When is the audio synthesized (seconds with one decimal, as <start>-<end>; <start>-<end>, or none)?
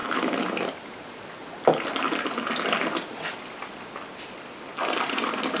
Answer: 0.7-1.4; 4.8-5.6